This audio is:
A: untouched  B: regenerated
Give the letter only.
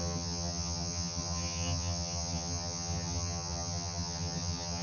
B